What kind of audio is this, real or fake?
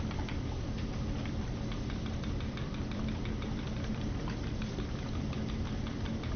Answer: fake